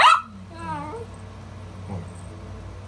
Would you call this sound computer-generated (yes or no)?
no